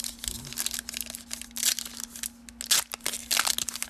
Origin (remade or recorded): recorded